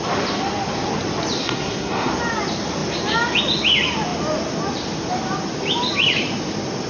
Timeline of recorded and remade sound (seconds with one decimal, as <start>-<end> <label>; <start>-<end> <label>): 0.0-1.4 recorded; 1.4-2.1 remade; 2.1-6.9 recorded